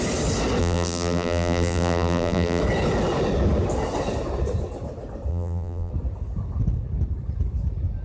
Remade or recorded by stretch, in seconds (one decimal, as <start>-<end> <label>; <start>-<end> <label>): 0.0-0.6 recorded; 0.6-2.6 remade; 2.6-5.3 recorded; 5.3-5.9 remade; 5.9-8.0 recorded